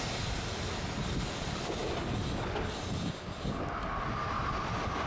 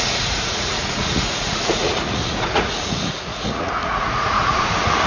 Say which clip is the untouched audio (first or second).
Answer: first